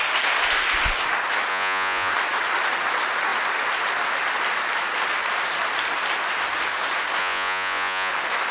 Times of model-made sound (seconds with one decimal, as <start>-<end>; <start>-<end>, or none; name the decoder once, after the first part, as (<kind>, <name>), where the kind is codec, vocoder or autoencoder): 1.5-2.1 (vocoder, Vocos); 7.2-8.1